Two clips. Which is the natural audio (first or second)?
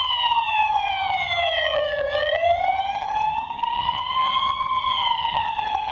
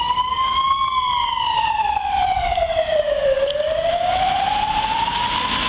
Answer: second